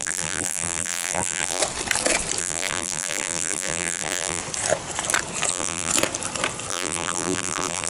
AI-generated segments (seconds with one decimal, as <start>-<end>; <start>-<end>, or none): 0.0-1.6; 2.4-4.4; 5.5-5.9; 6.7-7.9